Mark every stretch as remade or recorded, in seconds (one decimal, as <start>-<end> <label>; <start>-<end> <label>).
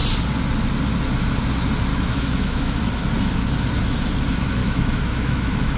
0.0-1.9 recorded; 1.9-2.8 remade; 2.8-4.6 recorded; 4.6-5.8 remade